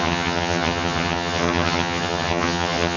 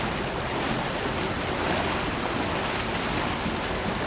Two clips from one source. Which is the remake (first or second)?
first